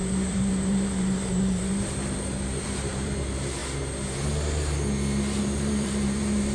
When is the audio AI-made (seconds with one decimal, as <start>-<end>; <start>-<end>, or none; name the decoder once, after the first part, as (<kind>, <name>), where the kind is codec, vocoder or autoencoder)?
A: 0.0-3.6 (vocoder, BigVGAN v2); 5.4-6.5